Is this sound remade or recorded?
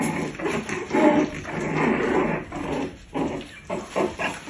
recorded